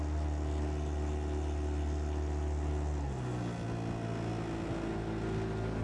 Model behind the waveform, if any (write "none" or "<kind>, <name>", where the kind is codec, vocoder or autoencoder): none